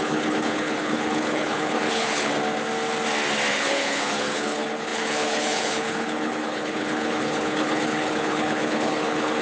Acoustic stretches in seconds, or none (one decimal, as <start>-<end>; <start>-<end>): 2.3-3.5